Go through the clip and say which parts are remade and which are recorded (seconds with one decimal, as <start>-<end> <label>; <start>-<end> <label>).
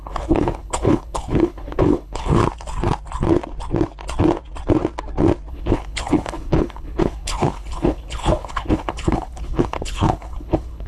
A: 0.0-2.4 remade; 2.4-5.5 recorded; 5.5-10.9 remade